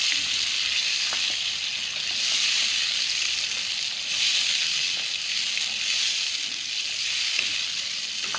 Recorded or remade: recorded